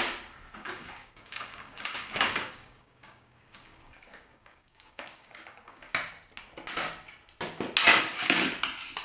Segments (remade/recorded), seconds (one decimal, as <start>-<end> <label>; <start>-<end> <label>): 0.0-0.6 recorded; 0.6-5.8 remade; 5.8-7.9 recorded; 7.9-8.5 remade; 8.5-9.0 recorded